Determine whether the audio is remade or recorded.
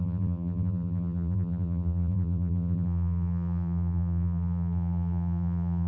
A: remade